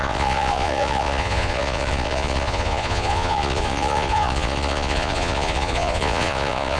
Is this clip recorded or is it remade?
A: remade